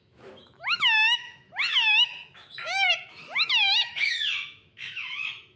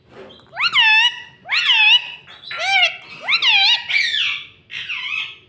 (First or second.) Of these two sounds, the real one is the second